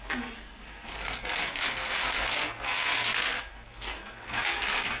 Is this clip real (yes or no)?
no